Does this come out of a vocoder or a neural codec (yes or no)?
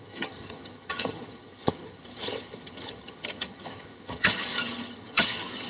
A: yes